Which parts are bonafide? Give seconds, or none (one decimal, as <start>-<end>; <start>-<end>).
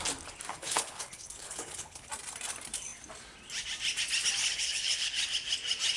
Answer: 0.0-0.5; 2.1-4.4; 5.2-6.0